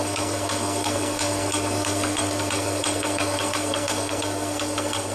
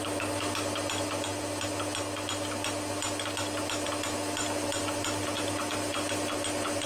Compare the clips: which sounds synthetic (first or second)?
first